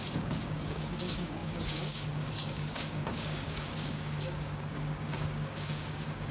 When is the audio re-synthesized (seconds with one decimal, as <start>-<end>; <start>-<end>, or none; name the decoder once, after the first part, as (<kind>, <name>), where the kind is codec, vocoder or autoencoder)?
0.0-6.3 (codec, DAC)